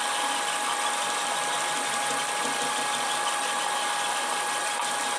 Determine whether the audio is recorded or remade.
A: remade